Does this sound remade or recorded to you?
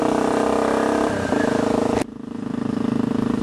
recorded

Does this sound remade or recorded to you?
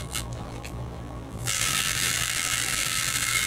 remade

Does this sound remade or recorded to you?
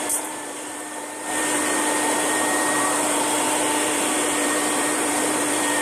remade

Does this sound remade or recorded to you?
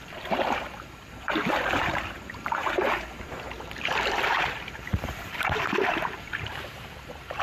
remade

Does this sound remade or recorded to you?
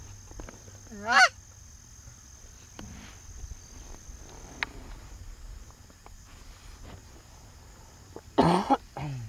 recorded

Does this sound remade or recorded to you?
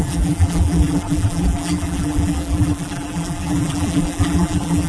remade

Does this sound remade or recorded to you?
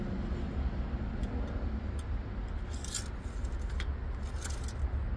recorded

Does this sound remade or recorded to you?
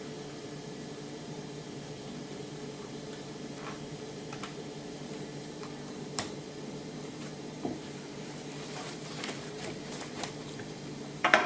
remade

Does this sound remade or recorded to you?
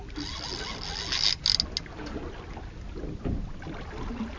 recorded